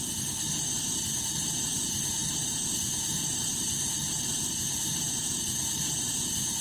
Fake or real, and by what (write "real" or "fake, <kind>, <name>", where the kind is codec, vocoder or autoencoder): fake, vocoder, BigVGAN v2